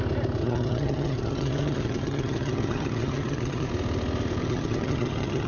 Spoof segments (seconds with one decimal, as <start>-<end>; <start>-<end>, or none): 0.4-3.7; 4.4-5.5